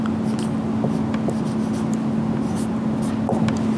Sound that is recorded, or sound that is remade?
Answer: recorded